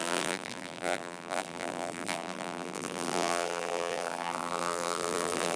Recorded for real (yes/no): no